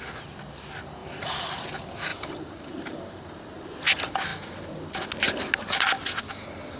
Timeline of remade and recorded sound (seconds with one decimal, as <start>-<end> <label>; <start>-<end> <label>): 0.0-1.0 recorded; 1.0-1.6 remade; 1.6-2.1 recorded; 2.1-3.3 remade; 3.3-6.8 recorded